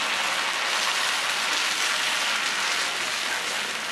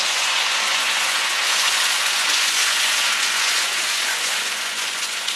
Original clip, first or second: first